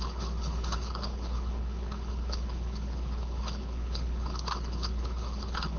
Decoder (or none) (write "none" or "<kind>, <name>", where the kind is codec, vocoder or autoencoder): codec, HILCodec